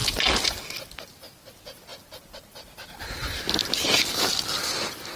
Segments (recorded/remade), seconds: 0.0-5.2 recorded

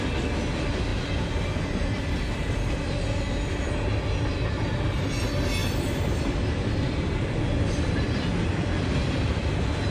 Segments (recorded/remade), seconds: 0.0-0.9 recorded; 0.9-2.2 remade; 2.2-5.6 recorded; 5.6-9.4 remade; 9.4-9.9 recorded

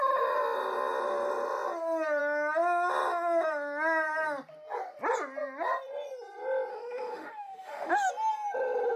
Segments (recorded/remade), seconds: 0.0-6.7 recorded; 6.7-8.1 remade; 8.1-9.0 recorded

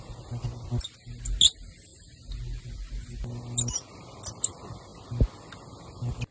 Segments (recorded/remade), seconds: 0.0-6.3 recorded